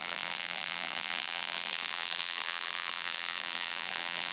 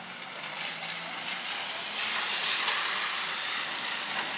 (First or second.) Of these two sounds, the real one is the second